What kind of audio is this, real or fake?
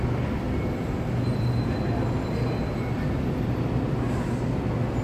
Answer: real